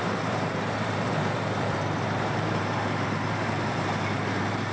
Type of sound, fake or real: fake